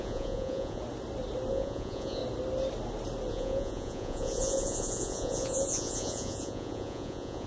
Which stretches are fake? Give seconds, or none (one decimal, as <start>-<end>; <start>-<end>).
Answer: 0.0-0.8; 1.5-2.2; 3.3-7.5